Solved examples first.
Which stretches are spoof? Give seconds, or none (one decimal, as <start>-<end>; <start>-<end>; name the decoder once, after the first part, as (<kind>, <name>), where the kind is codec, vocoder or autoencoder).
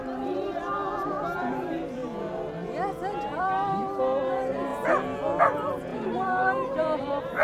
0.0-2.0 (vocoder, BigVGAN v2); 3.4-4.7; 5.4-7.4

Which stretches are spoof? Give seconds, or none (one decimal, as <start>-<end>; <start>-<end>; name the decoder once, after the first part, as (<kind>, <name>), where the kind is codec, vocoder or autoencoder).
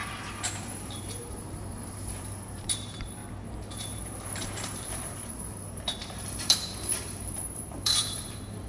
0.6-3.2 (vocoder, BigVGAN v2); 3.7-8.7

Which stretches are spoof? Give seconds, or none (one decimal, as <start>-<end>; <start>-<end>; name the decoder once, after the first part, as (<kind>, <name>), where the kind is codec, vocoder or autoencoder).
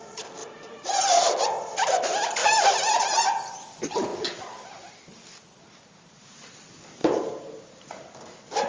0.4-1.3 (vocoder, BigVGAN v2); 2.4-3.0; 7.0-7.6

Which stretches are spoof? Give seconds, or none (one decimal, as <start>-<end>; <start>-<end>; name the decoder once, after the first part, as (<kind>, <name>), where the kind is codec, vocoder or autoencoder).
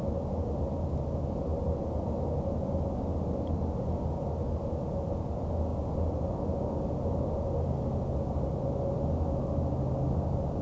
none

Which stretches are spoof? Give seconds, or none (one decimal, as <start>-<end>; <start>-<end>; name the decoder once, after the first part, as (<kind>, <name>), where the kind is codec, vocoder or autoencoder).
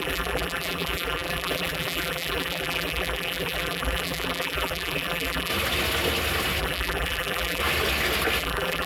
0.0-5.5 (vocoder, BigVGAN v2); 6.6-7.6; 8.4-8.9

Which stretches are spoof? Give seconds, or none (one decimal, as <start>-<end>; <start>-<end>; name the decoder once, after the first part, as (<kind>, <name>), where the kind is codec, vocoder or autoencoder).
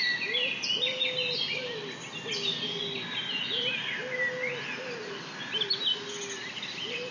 none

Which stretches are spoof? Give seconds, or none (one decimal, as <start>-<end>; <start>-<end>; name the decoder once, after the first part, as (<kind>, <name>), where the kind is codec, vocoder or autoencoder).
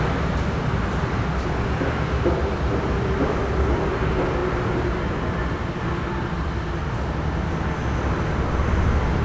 none